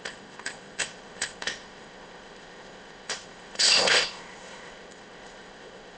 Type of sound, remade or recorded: remade